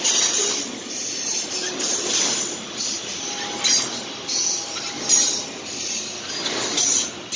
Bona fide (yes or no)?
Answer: yes